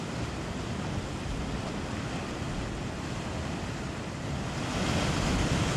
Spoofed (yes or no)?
no